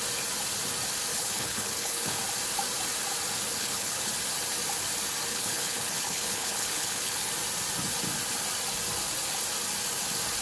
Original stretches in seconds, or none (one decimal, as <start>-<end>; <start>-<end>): 0.0-1.1; 2.2-3.6; 4.1-5.3; 7.3-10.4